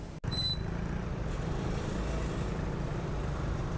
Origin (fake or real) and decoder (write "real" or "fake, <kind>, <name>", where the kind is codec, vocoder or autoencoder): real